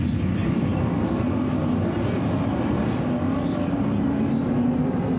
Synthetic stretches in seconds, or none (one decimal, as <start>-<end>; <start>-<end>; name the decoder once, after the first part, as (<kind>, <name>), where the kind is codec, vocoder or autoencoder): none